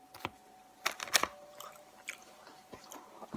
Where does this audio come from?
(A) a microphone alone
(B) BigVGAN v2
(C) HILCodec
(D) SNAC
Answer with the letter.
A